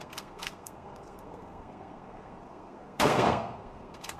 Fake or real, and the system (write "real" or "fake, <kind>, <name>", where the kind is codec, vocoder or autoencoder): fake, codec, SNAC